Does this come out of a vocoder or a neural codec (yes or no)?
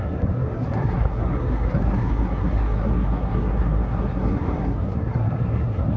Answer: yes